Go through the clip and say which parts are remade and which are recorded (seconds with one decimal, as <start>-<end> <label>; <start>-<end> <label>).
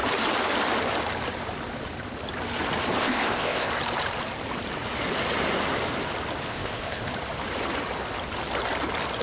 0.0-3.0 recorded; 3.0-3.7 remade; 3.7-6.5 recorded; 6.5-7.1 remade; 7.1-9.2 recorded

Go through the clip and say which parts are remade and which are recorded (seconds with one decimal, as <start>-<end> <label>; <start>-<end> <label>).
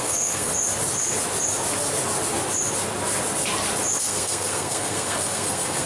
0.0-0.5 remade; 0.5-4.0 recorded; 4.0-5.9 remade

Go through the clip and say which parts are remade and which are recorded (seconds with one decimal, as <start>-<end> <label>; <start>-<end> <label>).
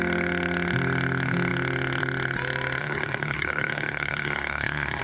0.0-2.8 recorded; 2.8-5.0 remade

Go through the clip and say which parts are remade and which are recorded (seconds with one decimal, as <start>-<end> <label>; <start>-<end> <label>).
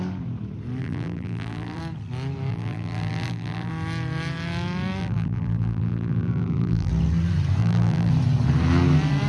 0.0-0.8 recorded; 0.8-1.8 remade; 1.8-2.5 recorded; 2.5-3.7 remade; 3.7-5.0 recorded; 5.0-6.9 remade; 6.9-7.6 recorded; 7.6-8.1 remade; 8.1-9.3 recorded